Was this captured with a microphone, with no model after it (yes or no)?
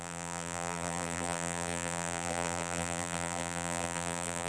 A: no